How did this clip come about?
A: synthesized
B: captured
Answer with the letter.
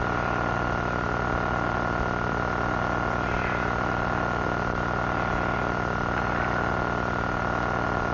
B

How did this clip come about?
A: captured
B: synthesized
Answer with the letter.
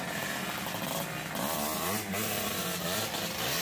A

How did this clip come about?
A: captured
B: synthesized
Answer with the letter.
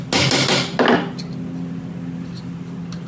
A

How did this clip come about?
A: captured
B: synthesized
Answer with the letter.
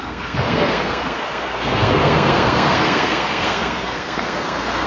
B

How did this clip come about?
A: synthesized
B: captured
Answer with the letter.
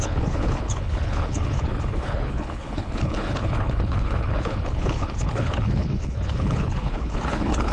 A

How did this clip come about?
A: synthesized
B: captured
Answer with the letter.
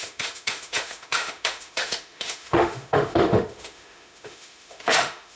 A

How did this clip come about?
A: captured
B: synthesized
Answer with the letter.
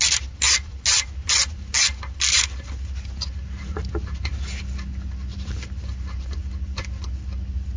A